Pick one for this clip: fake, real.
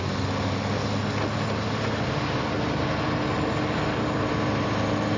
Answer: real